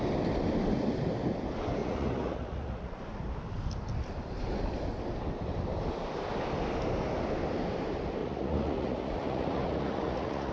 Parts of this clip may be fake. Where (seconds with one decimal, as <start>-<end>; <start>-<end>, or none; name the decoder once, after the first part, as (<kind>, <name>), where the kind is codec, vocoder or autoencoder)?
1.8-3.0 (vocoder, Vocos); 8.2-10.5